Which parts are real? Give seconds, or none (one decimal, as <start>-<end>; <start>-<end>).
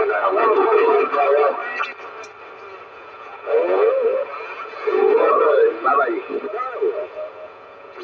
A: 1.6-2.9